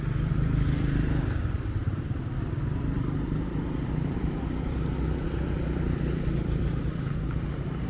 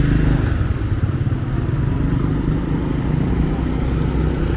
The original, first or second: second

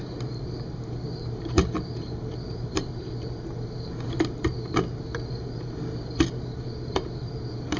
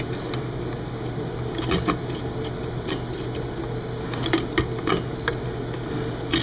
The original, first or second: second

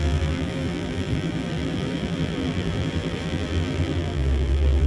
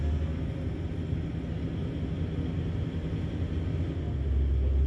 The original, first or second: second